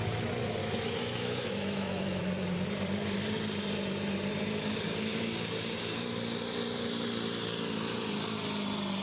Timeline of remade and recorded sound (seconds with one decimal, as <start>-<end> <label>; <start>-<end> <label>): 0.0-0.6 recorded; 0.6-2.2 remade; 2.2-9.0 recorded